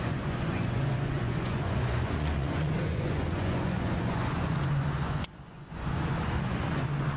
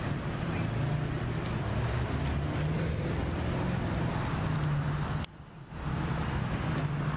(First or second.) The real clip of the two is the second